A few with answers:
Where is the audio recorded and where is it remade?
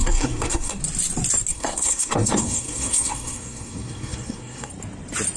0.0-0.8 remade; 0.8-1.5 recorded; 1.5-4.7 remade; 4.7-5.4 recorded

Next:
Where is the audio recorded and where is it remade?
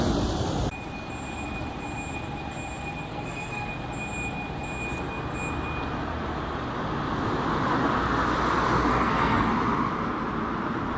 0.0-3.1 recorded; 3.1-3.7 remade; 3.7-8.9 recorded; 8.9-9.5 remade; 9.5-11.0 recorded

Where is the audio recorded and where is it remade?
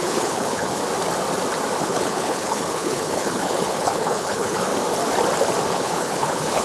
0.0-0.8 remade; 0.8-1.8 recorded; 1.8-4.7 remade; 4.7-5.7 recorded; 5.7-6.6 remade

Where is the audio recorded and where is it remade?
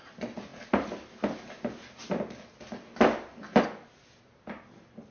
0.0-5.1 recorded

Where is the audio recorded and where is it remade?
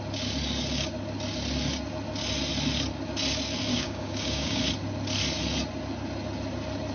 0.0-3.7 recorded; 3.7-4.6 remade; 4.6-6.9 recorded